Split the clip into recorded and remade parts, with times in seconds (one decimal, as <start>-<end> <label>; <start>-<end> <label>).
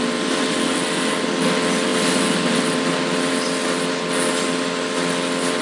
0.0-5.6 recorded